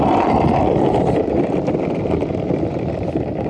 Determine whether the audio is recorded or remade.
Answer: recorded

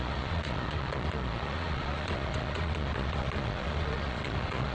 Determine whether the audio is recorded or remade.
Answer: remade